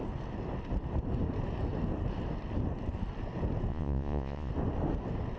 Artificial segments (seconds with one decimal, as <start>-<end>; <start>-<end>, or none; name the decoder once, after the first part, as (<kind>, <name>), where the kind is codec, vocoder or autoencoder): 3.7-4.5 (vocoder, Vocos)